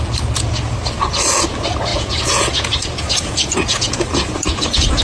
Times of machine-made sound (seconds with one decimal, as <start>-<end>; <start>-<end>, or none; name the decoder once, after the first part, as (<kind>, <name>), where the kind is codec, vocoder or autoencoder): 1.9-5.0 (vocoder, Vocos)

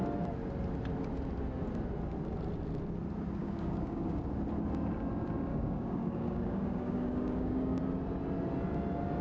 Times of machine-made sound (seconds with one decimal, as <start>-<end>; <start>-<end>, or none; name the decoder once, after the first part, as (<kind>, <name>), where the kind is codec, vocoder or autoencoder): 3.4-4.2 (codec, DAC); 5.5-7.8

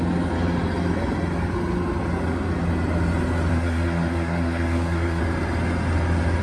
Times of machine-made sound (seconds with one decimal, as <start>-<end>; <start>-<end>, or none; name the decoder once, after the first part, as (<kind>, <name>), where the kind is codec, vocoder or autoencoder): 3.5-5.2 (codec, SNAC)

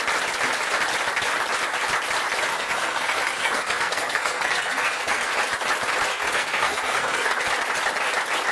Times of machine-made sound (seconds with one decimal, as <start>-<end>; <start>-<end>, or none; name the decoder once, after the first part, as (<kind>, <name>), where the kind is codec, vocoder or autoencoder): 2.5-5.3 (codec, SNAC); 6.1-7.4

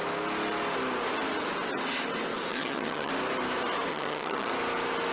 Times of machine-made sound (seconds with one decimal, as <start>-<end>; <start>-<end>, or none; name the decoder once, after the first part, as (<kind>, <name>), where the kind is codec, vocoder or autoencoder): 2.5-3.1 (vocoder, HiFi-GAN); 3.9-4.5

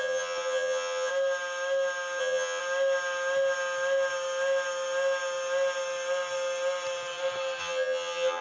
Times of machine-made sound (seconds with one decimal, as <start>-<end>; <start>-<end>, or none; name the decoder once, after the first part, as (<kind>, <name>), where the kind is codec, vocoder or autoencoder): 0.0-1.1 (vocoder, HiFi-GAN); 2.2-2.6; 7.6-8.4